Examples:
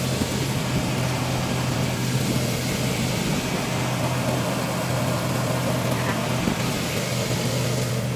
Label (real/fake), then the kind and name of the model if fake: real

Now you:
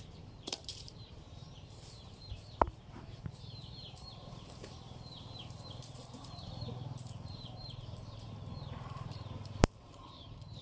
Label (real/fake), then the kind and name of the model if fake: fake, vocoder, BigVGAN v2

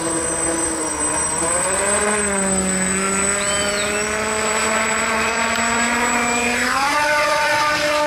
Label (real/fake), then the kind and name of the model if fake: real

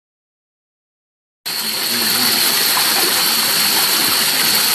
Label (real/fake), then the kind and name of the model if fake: real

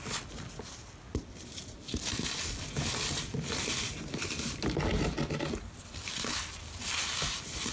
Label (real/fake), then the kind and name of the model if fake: real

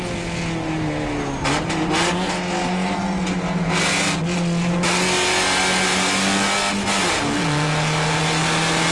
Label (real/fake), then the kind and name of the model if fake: real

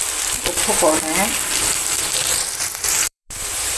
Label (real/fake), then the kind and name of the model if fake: fake, vocoder, BigVGAN v2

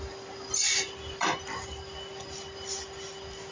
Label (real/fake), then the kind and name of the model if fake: real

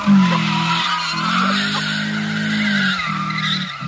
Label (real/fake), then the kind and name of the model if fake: real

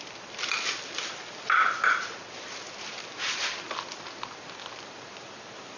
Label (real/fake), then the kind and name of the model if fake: real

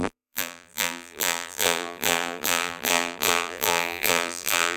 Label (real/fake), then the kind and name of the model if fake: fake, vocoder, BigVGAN v2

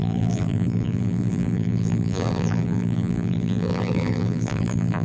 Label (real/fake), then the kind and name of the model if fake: fake, vocoder, BigVGAN v2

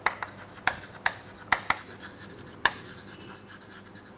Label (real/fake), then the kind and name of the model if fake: real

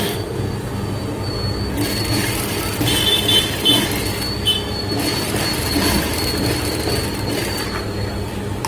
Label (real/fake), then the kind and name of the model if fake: real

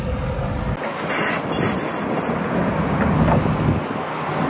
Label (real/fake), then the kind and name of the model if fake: real